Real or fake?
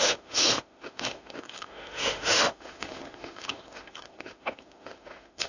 fake